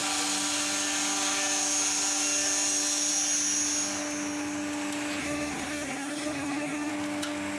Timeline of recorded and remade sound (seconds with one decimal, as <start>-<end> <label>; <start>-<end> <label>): 0.0-5.2 recorded; 5.2-6.9 remade; 6.9-7.6 recorded